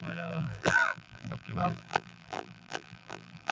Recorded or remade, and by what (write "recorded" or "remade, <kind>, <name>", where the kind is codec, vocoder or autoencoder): remade, vocoder, BigVGAN v2